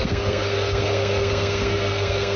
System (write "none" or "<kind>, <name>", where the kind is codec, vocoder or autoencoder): codec, SNAC